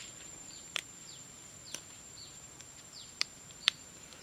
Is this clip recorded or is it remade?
remade